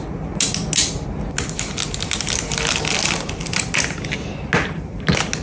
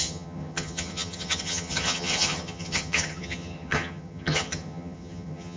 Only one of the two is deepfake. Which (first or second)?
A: second